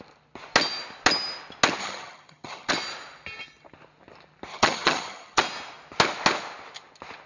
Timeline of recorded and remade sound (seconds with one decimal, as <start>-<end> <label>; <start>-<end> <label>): 0.0-1.8 recorded; 1.8-2.7 remade; 2.7-4.5 recorded; 4.5-5.4 remade; 5.4-7.3 recorded